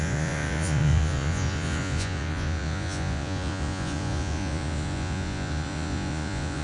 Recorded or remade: remade